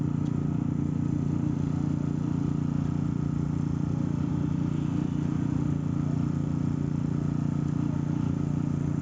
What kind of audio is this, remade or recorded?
recorded